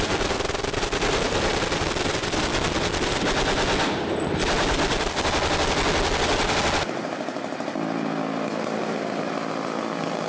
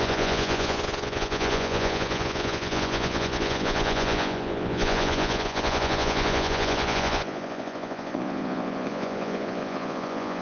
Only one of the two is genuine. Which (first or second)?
first